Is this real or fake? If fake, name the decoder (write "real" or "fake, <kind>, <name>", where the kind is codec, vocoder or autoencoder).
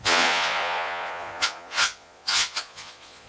fake, vocoder, Vocos